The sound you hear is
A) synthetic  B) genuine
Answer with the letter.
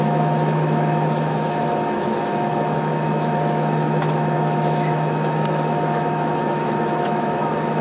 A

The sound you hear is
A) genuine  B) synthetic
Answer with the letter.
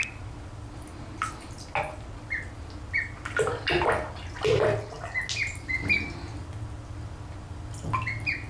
A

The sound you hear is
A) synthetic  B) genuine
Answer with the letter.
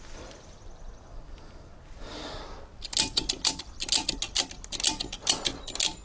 B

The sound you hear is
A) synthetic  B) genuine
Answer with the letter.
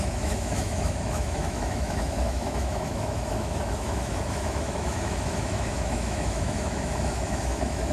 A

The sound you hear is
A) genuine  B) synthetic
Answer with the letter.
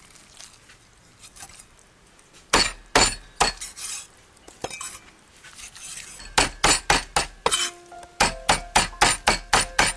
A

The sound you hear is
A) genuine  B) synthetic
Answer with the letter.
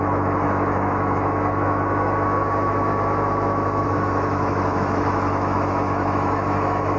B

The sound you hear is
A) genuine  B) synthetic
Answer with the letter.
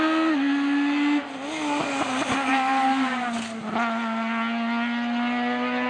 A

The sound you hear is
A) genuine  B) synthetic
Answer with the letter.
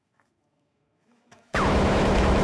B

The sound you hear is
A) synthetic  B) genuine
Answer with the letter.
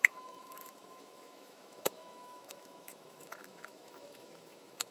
A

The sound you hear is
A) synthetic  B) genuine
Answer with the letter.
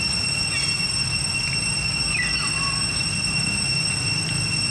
B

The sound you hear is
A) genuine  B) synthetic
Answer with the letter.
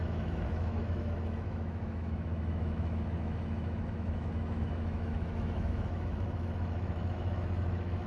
B